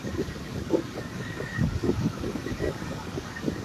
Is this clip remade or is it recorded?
remade